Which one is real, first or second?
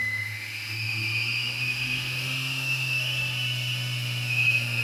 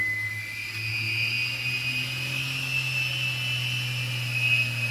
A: second